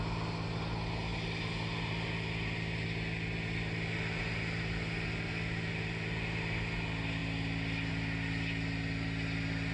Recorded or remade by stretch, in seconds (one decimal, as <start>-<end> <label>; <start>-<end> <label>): 0.0-9.7 recorded